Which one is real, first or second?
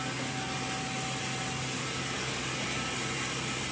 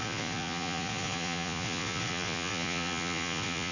first